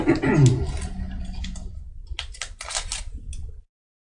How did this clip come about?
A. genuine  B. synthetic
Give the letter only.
A